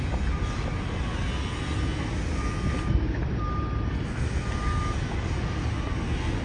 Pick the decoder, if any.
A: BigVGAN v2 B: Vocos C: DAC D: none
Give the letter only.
D